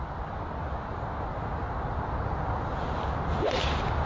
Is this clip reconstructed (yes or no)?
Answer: no